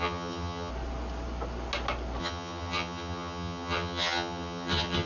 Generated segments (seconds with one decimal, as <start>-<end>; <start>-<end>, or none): 0.0-0.7; 2.2-5.1